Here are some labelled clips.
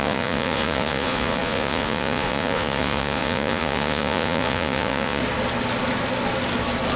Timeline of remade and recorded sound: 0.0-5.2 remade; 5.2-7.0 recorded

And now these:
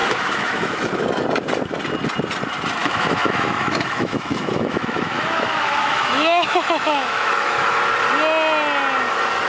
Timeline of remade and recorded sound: 0.0-0.9 remade; 0.9-2.8 recorded; 2.8-7.7 remade; 7.7-9.5 recorded

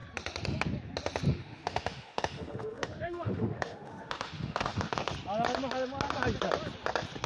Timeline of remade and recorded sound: 0.0-1.3 recorded; 1.3-5.1 remade; 5.1-7.3 recorded

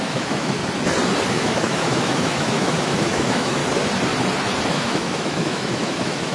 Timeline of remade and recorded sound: 0.0-0.6 remade; 0.6-1.3 recorded; 1.3-3.6 remade; 3.6-4.7 recorded; 4.7-6.3 remade

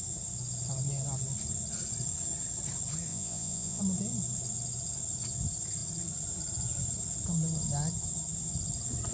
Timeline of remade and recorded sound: 0.0-3.1 recorded; 3.1-3.8 remade; 3.8-9.1 recorded

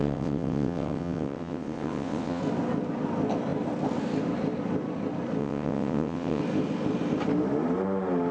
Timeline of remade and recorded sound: 0.0-2.4 remade; 2.4-5.4 recorded; 5.4-6.4 remade; 6.4-8.3 recorded